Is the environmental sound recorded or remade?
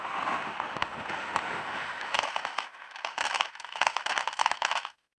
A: remade